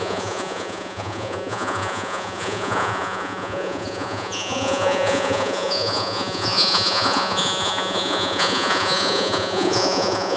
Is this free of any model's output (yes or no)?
no